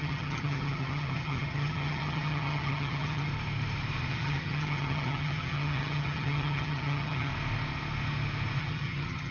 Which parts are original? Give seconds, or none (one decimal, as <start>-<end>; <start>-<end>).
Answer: 3.3-4.1; 7.3-8.6